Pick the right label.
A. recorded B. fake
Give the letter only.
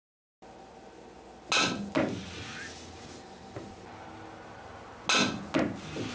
A